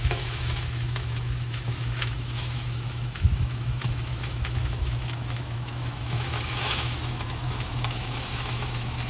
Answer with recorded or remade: remade